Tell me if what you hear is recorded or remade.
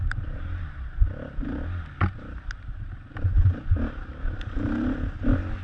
recorded